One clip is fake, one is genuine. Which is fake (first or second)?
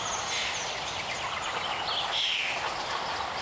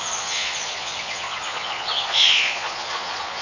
second